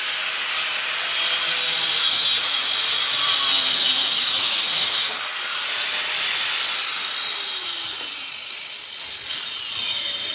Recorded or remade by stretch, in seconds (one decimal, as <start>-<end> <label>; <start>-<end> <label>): 0.0-2.0 recorded; 2.0-2.7 remade; 2.7-3.7 recorded; 3.7-5.2 remade; 5.2-10.3 recorded